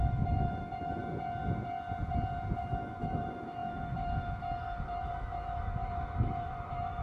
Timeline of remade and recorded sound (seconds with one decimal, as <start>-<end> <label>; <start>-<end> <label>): 0.0-1.0 remade; 1.0-2.6 recorded; 2.6-7.0 remade